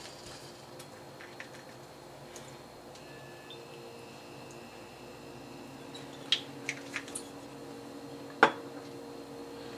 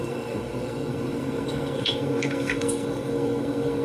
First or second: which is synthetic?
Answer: second